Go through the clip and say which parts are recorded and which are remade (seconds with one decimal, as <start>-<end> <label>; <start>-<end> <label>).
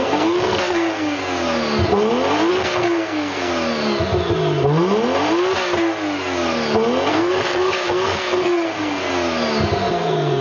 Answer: 0.0-1.2 remade; 1.2-2.5 recorded; 2.5-3.5 remade; 3.5-7.1 recorded; 7.1-9.1 remade; 9.1-9.9 recorded; 9.9-10.4 remade